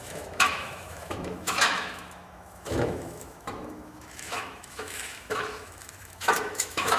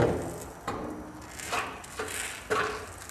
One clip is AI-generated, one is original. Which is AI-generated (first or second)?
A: first